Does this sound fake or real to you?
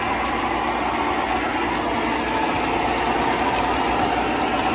real